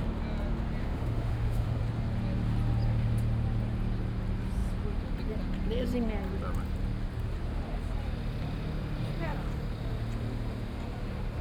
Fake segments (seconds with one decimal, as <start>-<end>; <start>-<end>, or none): 0.8-1.8